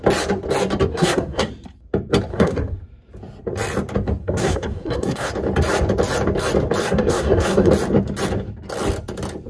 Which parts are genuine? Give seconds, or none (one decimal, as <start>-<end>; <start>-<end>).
0.0-0.9; 1.5-2.3; 2.8-4.2; 5.3-6.8; 7.7-9.5